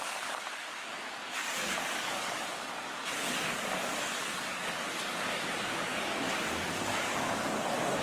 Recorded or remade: remade